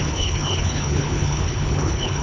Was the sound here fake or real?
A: fake